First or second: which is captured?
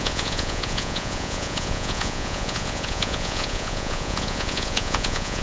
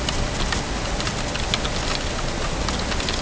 second